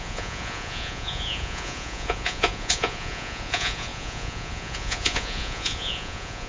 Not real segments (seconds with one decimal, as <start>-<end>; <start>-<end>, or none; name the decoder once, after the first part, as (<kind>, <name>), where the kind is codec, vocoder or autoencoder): 0.0-6.5 (vocoder, Vocos)